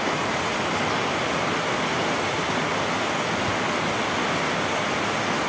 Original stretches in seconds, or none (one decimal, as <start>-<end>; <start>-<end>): 0.0-5.5